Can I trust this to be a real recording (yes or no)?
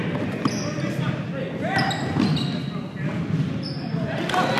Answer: yes